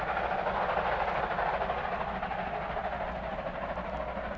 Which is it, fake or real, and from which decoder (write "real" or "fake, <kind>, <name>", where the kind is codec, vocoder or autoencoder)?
real